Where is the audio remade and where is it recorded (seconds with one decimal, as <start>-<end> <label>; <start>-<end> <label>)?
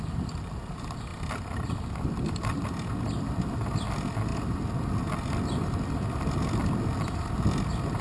0.0-8.0 recorded